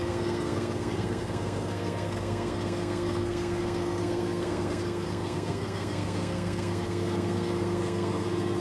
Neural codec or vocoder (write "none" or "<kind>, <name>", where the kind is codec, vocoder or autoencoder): codec, SNAC